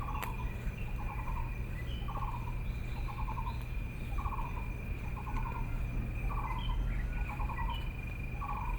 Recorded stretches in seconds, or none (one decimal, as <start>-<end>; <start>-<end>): none